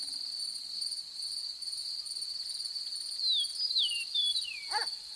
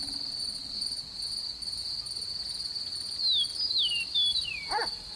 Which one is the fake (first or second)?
first